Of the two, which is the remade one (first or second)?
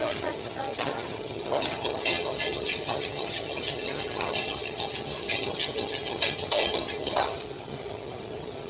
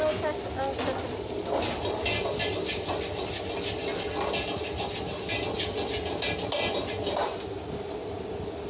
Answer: first